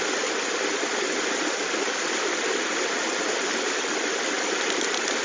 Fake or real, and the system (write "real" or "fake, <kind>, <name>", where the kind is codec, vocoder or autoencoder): real